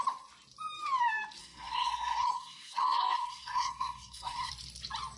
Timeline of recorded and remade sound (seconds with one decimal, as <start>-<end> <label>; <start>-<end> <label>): 0.0-1.4 recorded; 1.4-4.5 remade; 4.5-5.2 recorded